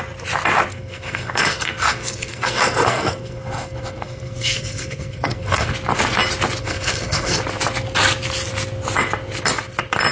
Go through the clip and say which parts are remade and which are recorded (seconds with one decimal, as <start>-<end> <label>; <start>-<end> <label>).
0.0-0.7 recorded; 0.7-5.7 remade; 5.7-6.6 recorded; 6.6-7.4 remade; 7.4-10.1 recorded